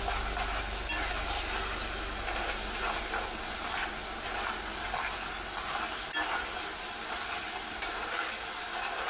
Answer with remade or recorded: recorded